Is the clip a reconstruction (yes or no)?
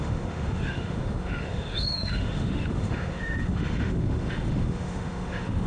yes